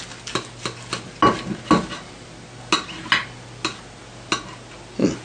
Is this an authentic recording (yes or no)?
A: yes